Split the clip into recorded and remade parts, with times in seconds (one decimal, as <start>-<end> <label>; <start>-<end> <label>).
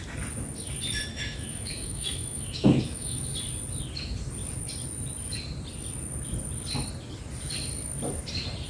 0.0-1.1 recorded; 1.1-3.2 remade; 3.2-8.7 recorded